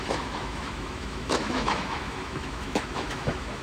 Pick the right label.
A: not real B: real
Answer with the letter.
A